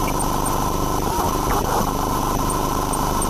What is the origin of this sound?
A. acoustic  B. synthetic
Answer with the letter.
A